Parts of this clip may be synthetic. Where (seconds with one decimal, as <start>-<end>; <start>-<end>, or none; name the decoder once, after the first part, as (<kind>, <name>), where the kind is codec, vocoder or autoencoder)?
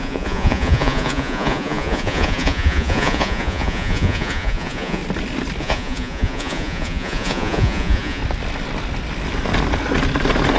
0.0-5.0 (vocoder, Vocos); 5.6-8.2